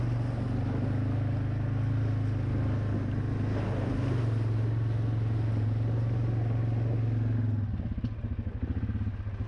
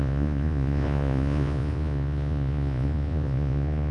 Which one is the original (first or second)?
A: first